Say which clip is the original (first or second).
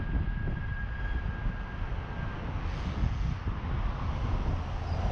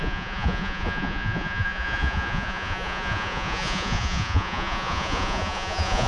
first